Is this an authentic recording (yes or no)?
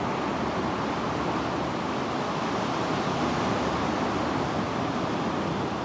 yes